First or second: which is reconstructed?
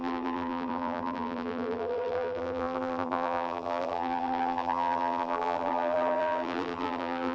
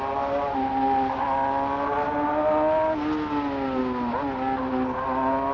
first